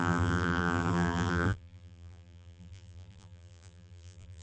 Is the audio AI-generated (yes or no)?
yes